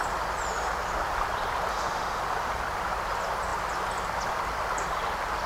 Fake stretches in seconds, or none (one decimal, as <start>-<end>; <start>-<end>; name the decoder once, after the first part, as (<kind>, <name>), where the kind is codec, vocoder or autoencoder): 1.7-2.2 (autoencoder, DAC-VAE)